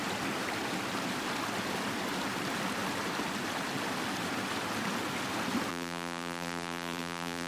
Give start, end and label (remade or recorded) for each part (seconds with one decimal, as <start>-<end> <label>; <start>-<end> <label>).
0.0-5.7 recorded; 5.7-7.5 remade

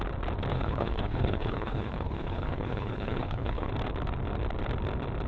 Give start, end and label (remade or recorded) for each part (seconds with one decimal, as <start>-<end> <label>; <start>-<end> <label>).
0.0-0.5 recorded; 0.5-3.7 remade; 3.7-5.3 recorded